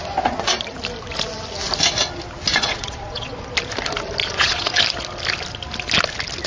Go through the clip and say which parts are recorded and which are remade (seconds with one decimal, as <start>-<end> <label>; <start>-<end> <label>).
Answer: 0.0-2.5 recorded; 2.5-3.4 remade; 3.4-4.2 recorded; 4.2-4.8 remade; 4.8-6.5 recorded